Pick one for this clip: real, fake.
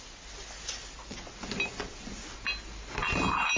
real